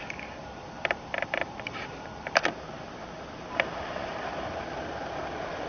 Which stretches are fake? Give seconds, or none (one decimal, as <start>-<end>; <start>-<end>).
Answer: 0.4-2.4; 4.0-4.6